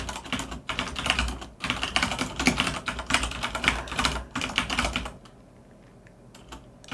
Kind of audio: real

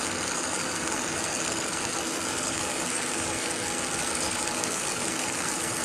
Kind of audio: fake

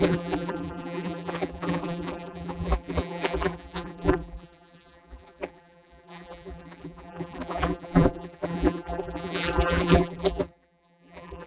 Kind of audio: fake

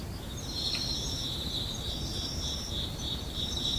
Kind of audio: fake